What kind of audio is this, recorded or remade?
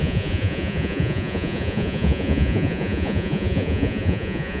remade